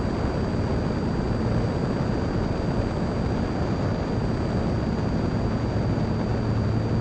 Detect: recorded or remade recorded